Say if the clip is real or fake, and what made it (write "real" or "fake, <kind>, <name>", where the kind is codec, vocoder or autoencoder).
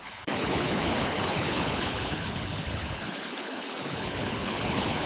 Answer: fake, codec, HILCodec